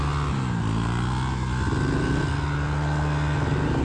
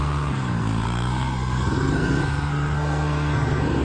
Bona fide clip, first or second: first